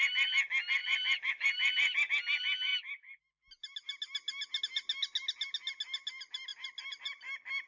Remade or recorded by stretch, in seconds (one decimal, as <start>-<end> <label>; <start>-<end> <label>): 0.0-0.8 recorded; 0.8-2.1 remade; 2.1-6.5 recorded; 6.5-7.7 remade